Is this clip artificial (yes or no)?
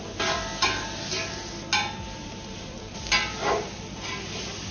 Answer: no